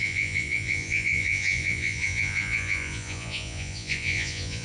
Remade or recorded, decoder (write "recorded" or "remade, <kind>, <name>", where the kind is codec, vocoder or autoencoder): remade, vocoder, Vocos